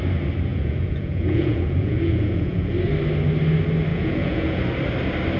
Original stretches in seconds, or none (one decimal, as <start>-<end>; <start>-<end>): 0.0-0.5; 2.7-3.9; 4.6-5.4